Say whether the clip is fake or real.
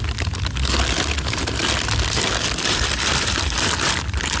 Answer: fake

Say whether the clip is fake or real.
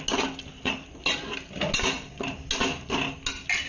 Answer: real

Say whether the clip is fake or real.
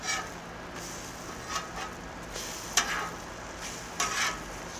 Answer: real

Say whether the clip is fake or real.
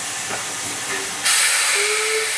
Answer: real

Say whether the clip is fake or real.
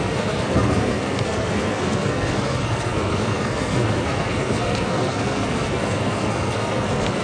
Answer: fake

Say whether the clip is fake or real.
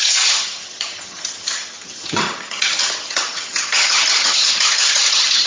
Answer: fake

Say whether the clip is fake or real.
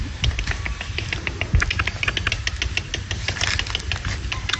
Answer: real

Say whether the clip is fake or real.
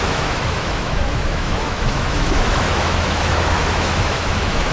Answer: fake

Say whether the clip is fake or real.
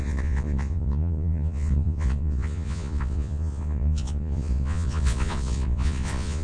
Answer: fake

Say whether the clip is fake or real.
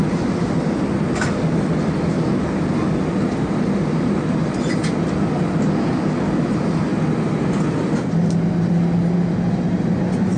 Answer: real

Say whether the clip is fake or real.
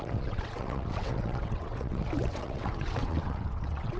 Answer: fake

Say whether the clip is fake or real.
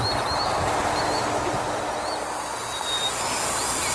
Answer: real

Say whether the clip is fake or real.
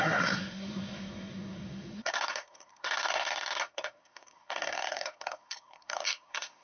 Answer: fake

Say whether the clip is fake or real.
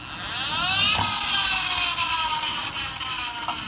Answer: real